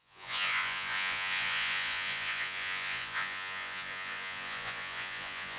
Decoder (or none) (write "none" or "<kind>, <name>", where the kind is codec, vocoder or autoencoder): vocoder, Vocos